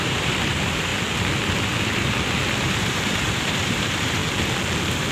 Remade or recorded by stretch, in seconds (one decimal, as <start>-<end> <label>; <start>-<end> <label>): 0.0-0.9 remade; 0.9-2.6 recorded; 2.6-4.2 remade; 4.2-5.1 recorded